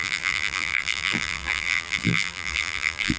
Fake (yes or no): yes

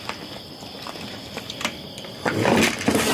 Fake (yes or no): no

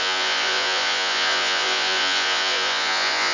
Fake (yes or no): yes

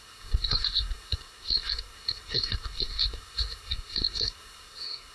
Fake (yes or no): yes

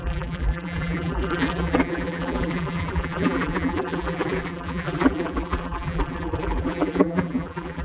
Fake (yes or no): yes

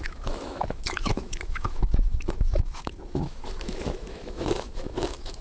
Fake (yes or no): yes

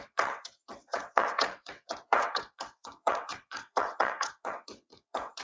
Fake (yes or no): yes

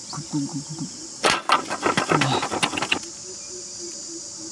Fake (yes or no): no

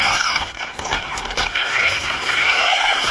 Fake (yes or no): yes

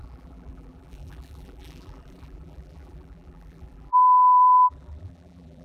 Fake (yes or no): yes